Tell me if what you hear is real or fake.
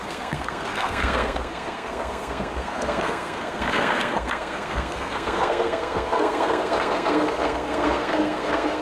fake